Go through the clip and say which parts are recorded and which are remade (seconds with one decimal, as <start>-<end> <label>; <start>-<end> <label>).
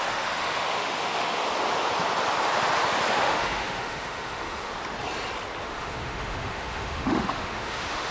0.0-1.4 remade; 1.4-3.2 recorded; 3.2-4.7 remade; 4.7-5.6 recorded; 5.6-8.1 remade